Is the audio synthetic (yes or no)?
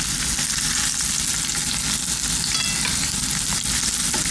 no